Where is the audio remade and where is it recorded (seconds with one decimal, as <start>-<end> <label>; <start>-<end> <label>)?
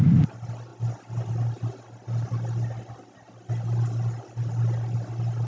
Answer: 0.0-5.5 recorded